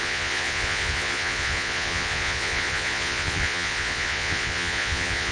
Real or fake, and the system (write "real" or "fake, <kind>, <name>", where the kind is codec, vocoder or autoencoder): fake, vocoder, Vocos